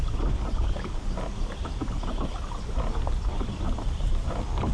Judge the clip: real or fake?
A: real